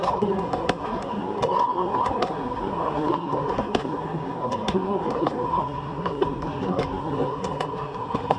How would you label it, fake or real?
fake